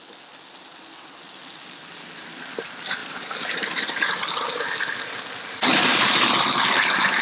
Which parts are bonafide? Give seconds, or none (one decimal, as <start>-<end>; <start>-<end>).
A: 0.0-3.0; 3.8-5.7; 6.4-7.2